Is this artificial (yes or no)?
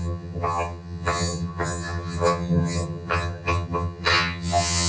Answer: yes